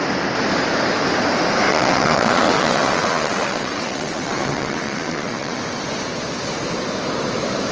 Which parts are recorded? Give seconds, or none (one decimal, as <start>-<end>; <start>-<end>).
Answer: 0.0-1.7; 5.6-7.7